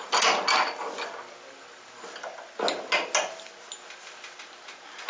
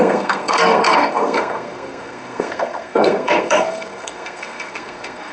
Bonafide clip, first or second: first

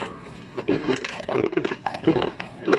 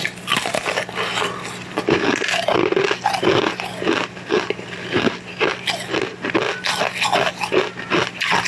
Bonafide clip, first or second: second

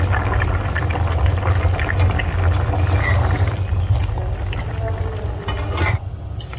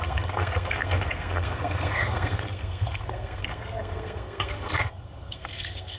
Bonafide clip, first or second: first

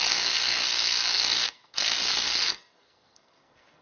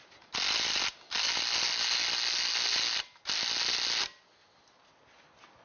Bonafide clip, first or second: second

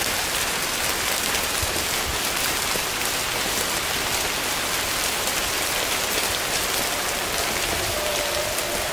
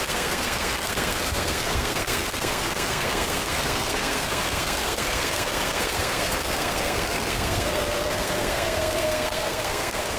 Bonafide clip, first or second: first